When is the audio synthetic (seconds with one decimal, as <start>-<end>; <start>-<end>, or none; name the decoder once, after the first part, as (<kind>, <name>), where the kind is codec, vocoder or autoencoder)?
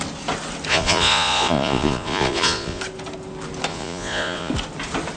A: 0.7-2.8 (vocoder, Vocos); 3.7-4.5